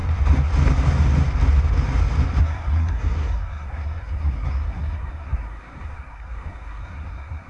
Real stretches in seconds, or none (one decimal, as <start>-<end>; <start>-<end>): 0.0-2.4